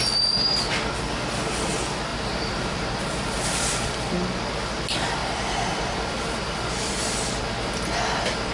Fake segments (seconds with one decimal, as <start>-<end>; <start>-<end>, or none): 2.1-3.0; 5.2-7.4